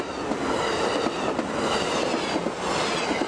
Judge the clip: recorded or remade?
recorded